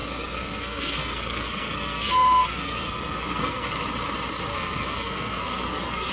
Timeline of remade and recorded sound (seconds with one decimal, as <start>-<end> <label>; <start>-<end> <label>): 0.0-3.7 remade; 3.7-4.5 recorded; 4.5-6.1 remade